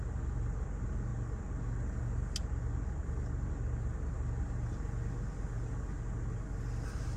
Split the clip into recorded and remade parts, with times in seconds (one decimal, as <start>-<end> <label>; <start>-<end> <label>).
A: 0.0-7.2 recorded